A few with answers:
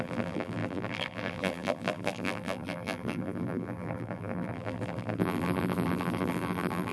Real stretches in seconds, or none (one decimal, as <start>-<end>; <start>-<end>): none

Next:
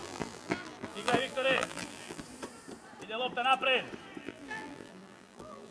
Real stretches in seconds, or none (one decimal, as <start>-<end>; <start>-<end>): 2.2-4.2

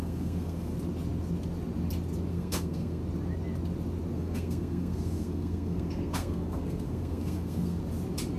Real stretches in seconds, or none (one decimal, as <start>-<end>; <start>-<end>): 0.7-2.3; 3.0-4.1; 7.8-8.4

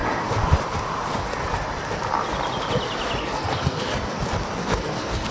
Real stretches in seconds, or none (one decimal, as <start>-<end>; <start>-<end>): 0.0-3.2; 3.9-4.6

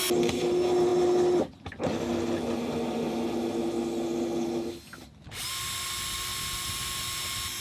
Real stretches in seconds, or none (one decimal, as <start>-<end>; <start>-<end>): 0.0-7.6

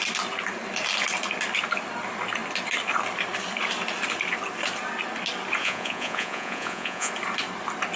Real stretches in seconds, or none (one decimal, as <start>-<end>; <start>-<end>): 0.0-5.6; 7.1-8.0

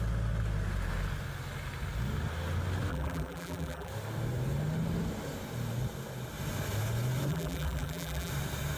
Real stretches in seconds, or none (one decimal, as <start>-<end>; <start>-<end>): 0.0-2.9; 3.9-7.3; 8.3-8.8

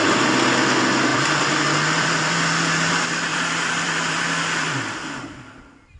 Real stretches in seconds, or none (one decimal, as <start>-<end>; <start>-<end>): 0.0-1.1; 2.9-3.3; 5.5-6.0